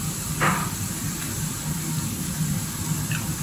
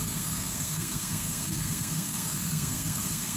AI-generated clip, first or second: second